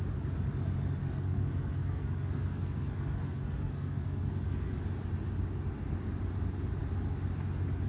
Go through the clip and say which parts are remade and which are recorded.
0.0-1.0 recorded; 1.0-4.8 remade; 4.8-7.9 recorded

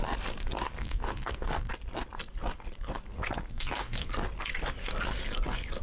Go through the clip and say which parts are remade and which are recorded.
0.0-0.8 recorded; 0.8-1.7 remade; 1.7-3.5 recorded; 3.5-4.1 remade; 4.1-5.8 recorded

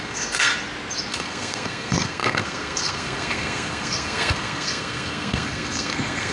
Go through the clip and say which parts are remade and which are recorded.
0.0-0.5 remade; 0.5-1.1 recorded; 1.1-6.3 remade

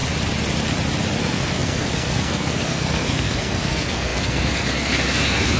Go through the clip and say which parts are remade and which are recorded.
0.0-1.2 recorded; 1.2-5.6 remade

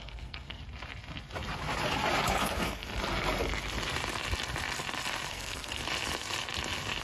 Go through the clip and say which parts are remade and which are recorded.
0.0-0.6 remade; 0.6-2.3 recorded; 2.3-2.9 remade; 2.9-5.3 recorded; 5.3-5.8 remade; 5.8-7.0 recorded